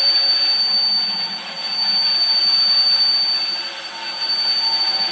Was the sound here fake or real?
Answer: fake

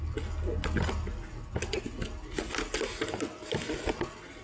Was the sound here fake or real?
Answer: real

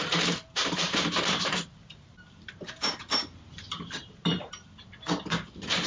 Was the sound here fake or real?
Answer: fake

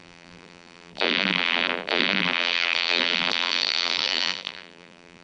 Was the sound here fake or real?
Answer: fake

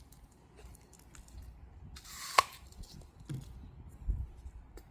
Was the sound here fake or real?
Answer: real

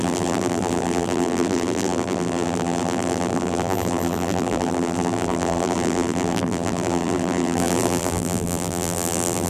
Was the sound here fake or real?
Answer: fake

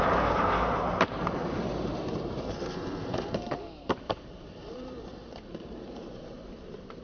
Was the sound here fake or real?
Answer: fake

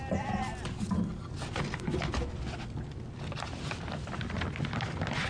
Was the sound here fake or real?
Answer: real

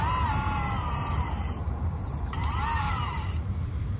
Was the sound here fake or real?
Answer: fake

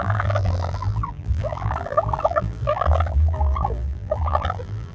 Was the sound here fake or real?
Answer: fake